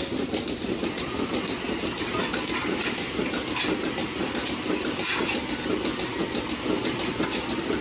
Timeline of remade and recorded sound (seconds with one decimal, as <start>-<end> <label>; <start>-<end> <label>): 0.0-7.8 recorded